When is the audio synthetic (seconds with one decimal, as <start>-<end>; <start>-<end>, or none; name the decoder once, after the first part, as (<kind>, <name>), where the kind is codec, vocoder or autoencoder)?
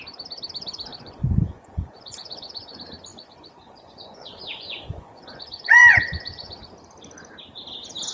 0.9-2.7 (vocoder, Vocos); 3.1-6.6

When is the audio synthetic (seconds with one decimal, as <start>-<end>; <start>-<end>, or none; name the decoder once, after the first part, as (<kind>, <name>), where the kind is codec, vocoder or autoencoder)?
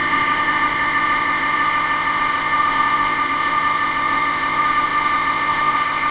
0.0-6.1 (codec, ZipCodec)